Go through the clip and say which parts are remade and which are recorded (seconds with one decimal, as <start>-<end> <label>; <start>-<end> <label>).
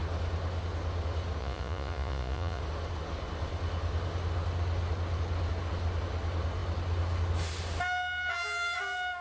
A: 0.0-1.4 recorded; 1.4-2.6 remade; 2.6-9.2 recorded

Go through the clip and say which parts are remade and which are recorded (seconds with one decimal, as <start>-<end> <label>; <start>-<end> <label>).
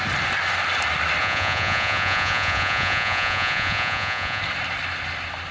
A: 0.0-1.2 recorded; 1.2-4.4 remade; 4.4-5.5 recorded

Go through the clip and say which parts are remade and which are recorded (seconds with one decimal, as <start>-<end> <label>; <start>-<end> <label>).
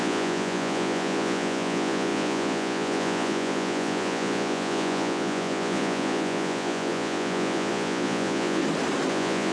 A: 0.0-8.6 remade; 8.6-9.1 recorded; 9.1-9.5 remade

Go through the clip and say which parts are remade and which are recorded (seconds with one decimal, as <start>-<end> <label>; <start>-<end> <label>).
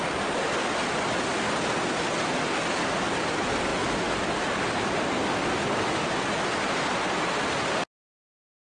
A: 0.0-8.6 recorded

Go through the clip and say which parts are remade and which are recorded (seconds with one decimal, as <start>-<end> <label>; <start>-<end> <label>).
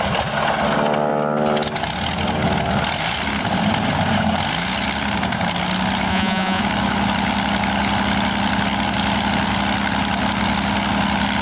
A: 0.0-6.1 recorded; 6.1-6.6 remade; 6.6-11.4 recorded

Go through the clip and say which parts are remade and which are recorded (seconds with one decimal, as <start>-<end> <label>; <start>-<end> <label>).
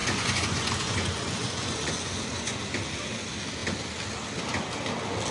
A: 0.0-2.6 remade; 2.6-5.3 recorded